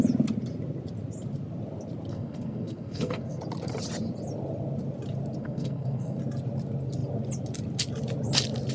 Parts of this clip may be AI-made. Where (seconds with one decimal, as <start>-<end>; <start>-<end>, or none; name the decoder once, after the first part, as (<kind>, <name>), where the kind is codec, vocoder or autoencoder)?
2.1-3.4 (codec, SNAC); 5.4-6.2